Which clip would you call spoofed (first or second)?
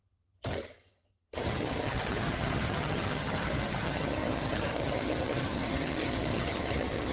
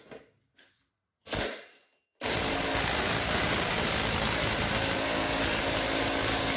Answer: first